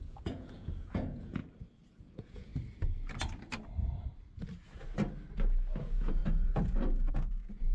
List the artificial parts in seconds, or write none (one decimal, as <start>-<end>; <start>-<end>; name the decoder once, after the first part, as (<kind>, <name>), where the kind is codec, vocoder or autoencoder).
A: 0.0-1.4 (vocoder, Vocos); 2.0-2.5; 5.8-6.2; 7.1-7.7